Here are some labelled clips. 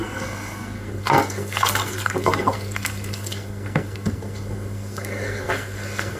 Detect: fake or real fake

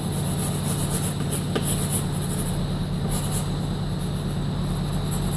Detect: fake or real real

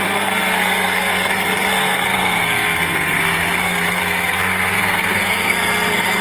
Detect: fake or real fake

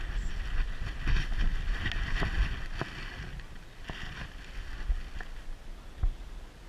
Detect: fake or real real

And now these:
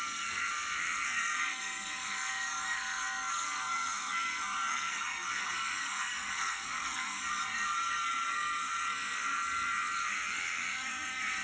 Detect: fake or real fake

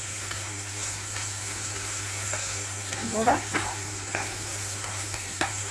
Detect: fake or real fake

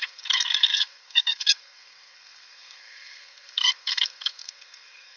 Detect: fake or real fake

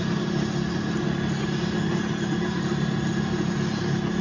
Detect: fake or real real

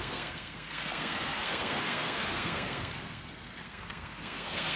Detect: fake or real fake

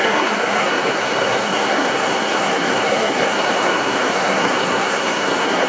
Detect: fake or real fake